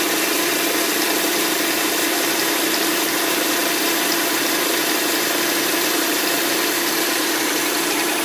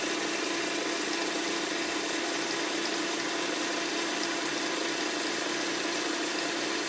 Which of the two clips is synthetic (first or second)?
first